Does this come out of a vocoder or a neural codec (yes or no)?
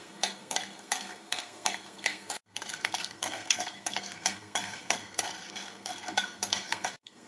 yes